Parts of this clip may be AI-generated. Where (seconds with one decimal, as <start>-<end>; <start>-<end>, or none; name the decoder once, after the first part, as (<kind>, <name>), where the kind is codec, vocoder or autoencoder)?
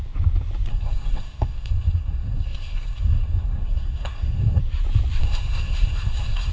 0.7-4.6 (codec, SNAC); 5.2-6.5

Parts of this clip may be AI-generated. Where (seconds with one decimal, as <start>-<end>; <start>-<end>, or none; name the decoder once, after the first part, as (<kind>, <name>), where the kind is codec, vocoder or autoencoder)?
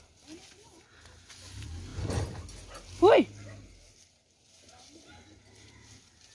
none